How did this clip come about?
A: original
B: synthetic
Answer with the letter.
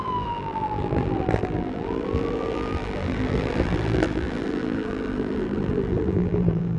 B